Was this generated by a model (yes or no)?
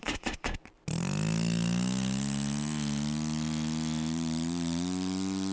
no